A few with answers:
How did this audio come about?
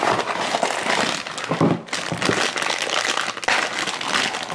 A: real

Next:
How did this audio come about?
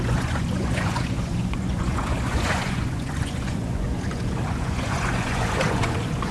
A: fake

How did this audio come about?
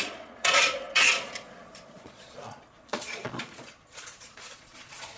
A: fake